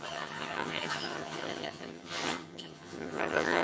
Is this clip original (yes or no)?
no